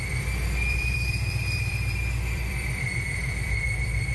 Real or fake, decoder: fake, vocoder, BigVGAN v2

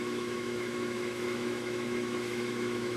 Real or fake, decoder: fake, autoencoder, DAC-VAE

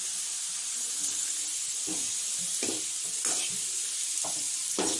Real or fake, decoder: fake, vocoder, BigVGAN v2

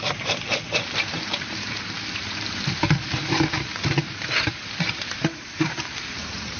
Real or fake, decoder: fake, vocoder, BigVGAN v2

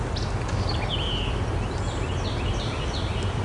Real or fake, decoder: real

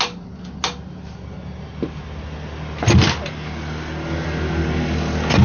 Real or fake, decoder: real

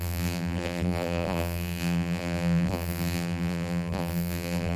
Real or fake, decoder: fake, vocoder, BigVGAN v2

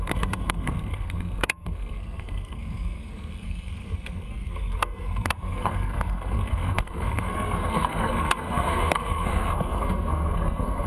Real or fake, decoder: fake, codec, SNAC